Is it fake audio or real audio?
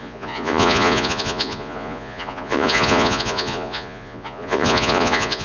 fake